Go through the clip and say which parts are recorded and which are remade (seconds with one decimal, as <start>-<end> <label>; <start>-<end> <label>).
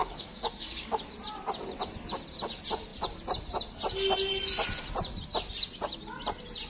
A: 0.0-0.9 remade; 0.9-6.7 recorded